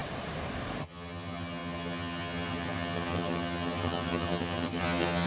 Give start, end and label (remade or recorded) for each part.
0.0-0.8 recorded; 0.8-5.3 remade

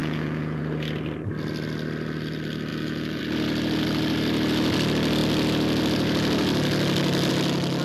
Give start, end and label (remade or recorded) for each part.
0.0-0.6 remade; 0.6-2.7 recorded; 2.7-3.2 remade; 3.2-7.8 recorded

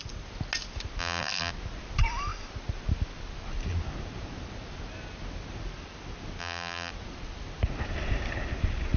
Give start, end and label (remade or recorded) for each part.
0.0-1.0 recorded; 1.0-1.5 remade; 1.5-6.4 recorded; 6.4-6.9 remade; 6.9-9.0 recorded

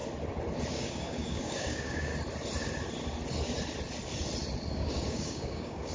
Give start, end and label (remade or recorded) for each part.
0.0-0.7 recorded; 0.7-2.1 remade; 2.1-4.7 recorded; 4.7-5.9 remade

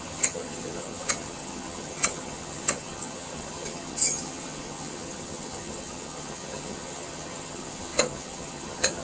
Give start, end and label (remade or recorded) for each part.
0.0-9.0 remade